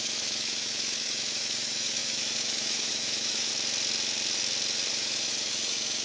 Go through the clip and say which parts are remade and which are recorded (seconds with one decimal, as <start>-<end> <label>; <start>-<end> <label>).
0.0-3.5 remade; 3.5-4.9 recorded; 4.9-6.0 remade